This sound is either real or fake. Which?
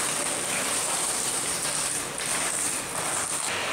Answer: real